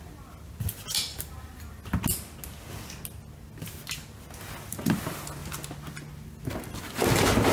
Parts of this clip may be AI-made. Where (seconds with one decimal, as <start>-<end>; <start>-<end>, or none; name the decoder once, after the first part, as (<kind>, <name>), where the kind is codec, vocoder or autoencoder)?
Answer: none